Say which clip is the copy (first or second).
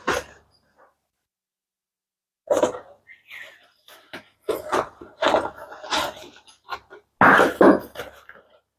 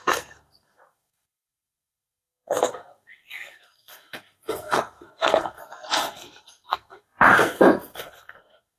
second